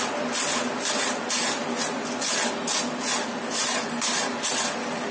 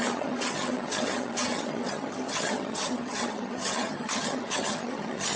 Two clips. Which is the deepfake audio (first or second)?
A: second